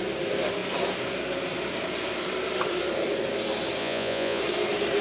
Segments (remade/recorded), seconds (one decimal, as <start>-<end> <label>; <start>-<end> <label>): 0.0-3.8 recorded; 3.8-4.4 remade; 4.4-5.0 recorded